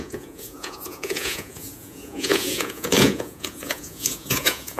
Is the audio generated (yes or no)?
yes